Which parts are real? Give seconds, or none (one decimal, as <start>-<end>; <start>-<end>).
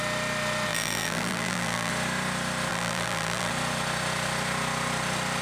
0.0-0.7; 1.9-2.7; 3.5-5.4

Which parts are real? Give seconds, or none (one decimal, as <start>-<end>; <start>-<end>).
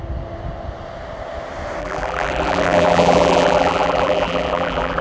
0.0-1.8